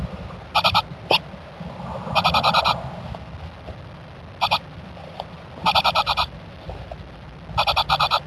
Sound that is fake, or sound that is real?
fake